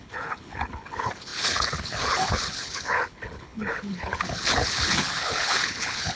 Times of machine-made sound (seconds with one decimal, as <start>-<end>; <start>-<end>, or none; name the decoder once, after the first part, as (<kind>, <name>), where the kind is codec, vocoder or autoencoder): 0.0-6.2 (codec, HILCodec)